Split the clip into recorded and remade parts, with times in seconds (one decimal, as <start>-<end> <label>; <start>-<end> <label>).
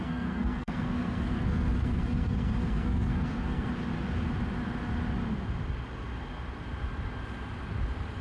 0.0-3.7 remade; 3.7-8.2 recorded